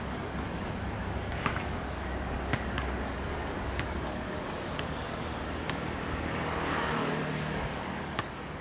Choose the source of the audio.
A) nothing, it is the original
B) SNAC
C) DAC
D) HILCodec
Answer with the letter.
C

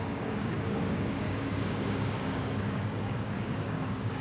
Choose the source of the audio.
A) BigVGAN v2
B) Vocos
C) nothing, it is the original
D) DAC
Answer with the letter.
D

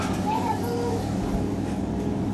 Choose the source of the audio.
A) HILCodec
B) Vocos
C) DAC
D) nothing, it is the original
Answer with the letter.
C